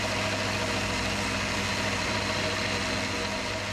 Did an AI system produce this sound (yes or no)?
no